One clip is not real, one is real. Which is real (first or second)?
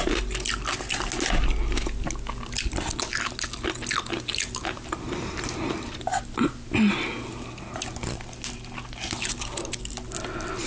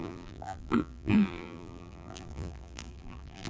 first